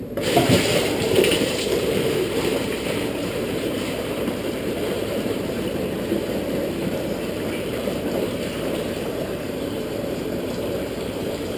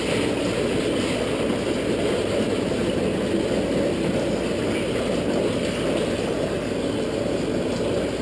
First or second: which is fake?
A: first